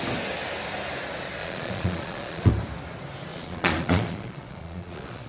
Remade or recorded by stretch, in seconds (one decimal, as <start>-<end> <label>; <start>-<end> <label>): 0.0-1.4 recorded; 1.4-2.5 remade; 2.5-3.3 recorded; 3.3-5.3 remade